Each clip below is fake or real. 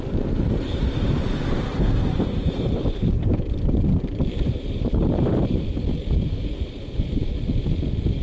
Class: fake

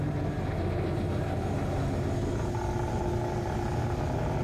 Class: real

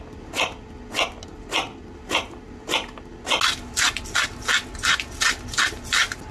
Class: real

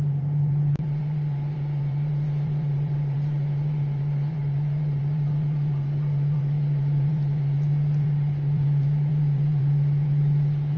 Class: fake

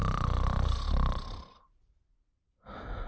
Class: fake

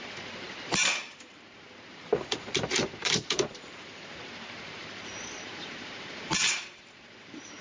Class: fake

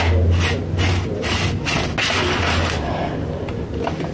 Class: real